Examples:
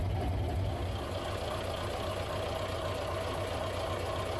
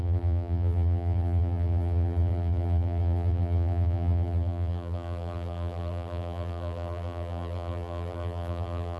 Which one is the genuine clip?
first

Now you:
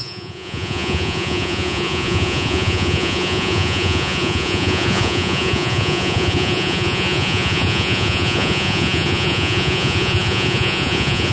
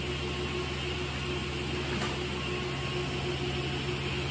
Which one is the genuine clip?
second